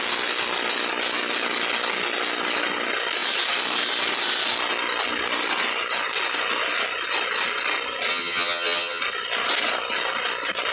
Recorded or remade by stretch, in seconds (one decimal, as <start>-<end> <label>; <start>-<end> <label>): 0.0-8.1 recorded; 8.1-9.0 remade; 9.0-10.7 recorded